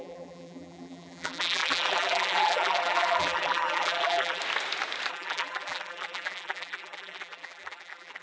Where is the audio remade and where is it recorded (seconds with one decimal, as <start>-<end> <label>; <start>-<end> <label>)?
0.0-4.4 remade; 4.4-5.1 recorded; 5.1-8.2 remade